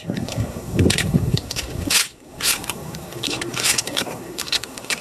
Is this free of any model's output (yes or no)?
no